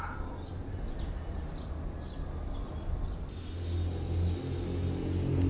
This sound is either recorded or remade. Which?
recorded